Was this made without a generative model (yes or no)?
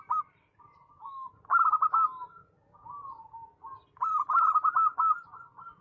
yes